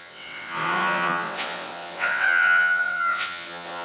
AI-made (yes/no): yes